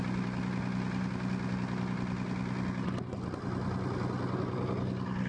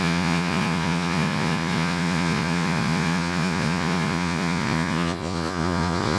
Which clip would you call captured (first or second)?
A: first